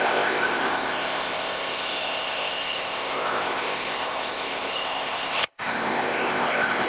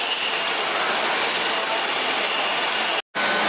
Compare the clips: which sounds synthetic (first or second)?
first